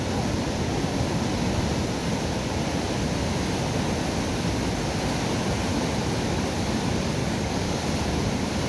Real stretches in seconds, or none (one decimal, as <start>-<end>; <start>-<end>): 0.0-7.2; 7.8-8.7